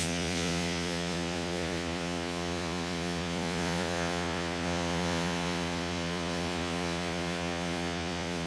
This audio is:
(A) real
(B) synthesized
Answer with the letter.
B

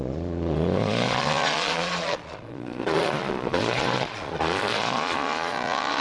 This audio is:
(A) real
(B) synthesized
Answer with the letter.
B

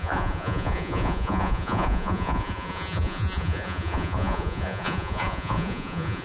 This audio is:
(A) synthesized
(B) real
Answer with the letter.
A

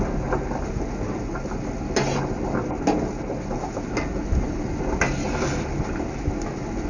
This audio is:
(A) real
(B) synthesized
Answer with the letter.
A